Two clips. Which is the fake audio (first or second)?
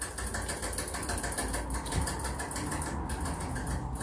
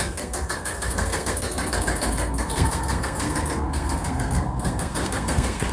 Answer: second